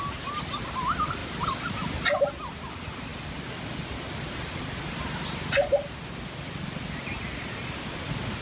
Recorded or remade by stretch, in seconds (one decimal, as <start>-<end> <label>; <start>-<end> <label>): 0.0-8.4 recorded